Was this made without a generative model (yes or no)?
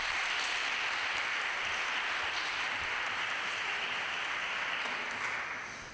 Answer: yes